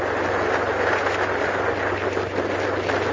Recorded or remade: recorded